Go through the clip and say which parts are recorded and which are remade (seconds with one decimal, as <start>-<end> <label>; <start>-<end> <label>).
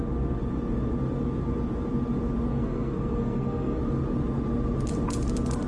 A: 0.0-2.5 recorded; 2.5-3.8 remade; 3.8-5.7 recorded